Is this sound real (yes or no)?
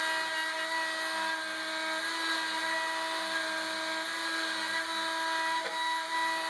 yes